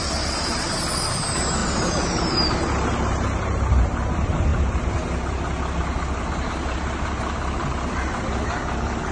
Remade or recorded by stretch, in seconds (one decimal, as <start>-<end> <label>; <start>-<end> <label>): 0.0-4.5 remade; 4.5-6.0 recorded; 6.0-9.1 remade